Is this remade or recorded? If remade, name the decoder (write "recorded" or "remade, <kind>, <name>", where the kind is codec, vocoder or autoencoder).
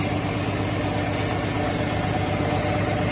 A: recorded